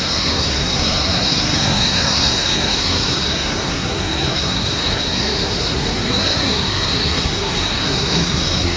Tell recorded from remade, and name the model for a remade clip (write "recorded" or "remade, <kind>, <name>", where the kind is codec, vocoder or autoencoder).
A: remade, codec, SNAC